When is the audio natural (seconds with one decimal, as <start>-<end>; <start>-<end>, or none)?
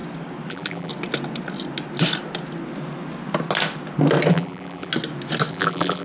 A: 0.0-0.5; 0.9-4.3; 4.9-5.5